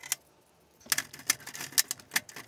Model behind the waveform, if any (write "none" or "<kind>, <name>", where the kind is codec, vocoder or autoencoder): none